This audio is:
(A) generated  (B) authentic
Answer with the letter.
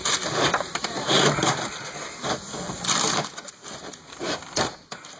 A